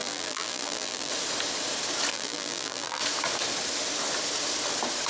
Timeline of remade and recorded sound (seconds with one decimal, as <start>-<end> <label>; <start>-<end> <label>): 0.0-1.1 remade; 1.1-2.1 recorded; 2.1-3.0 remade; 3.0-5.1 recorded

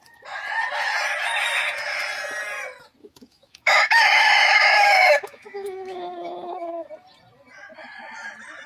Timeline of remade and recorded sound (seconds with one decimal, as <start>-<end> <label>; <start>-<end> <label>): 0.0-3.0 recorded; 3.0-6.9 remade; 6.9-8.7 recorded